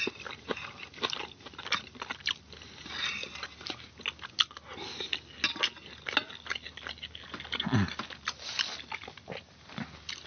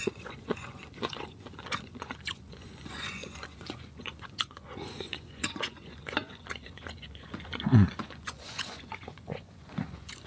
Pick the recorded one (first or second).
first